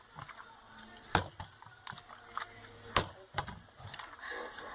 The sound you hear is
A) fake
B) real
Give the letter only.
B